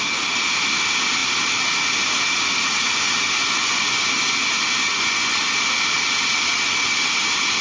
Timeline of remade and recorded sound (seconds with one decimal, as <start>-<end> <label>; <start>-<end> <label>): 0.0-3.4 recorded; 3.4-4.0 remade; 4.0-4.9 recorded; 4.9-5.4 remade; 5.4-7.6 recorded